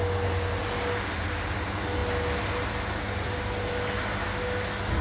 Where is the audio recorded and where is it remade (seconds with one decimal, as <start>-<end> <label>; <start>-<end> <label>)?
0.0-5.0 recorded